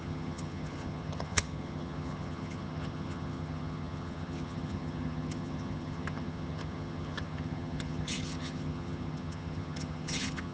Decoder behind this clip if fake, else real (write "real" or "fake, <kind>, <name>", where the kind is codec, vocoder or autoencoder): fake, vocoder, HiFi-GAN